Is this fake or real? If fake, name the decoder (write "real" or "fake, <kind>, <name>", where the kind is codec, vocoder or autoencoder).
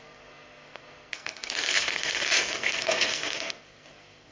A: fake, codec, SNAC